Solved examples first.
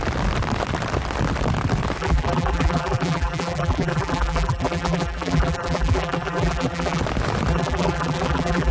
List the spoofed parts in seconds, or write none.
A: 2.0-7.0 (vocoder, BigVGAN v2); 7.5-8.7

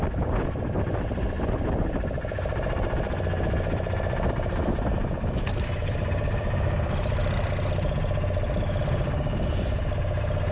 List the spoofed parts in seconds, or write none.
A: 0.0-7.2 (vocoder, BigVGAN v2); 8.8-10.5

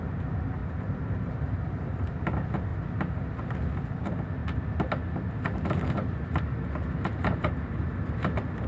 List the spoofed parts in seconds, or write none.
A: 0.6-2.1 (vocoder, BigVGAN v2)

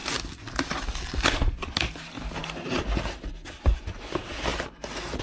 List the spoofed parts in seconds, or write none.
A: none

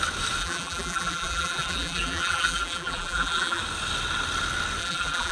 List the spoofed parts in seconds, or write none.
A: 0.4-3.6 (vocoder, BigVGAN v2); 4.8-5.3

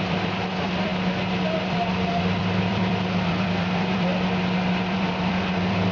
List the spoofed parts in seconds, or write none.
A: 0.0-0.9 (vocoder, BigVGAN v2); 1.5-4.1; 4.7-5.9

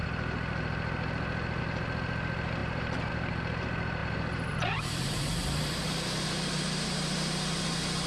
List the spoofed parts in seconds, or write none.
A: 2.6-3.1 (vocoder, BigVGAN v2); 4.0-8.1

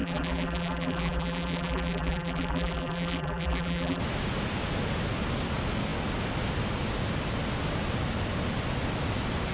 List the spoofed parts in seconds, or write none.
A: 0.0-4.0 (vocoder, BigVGAN v2)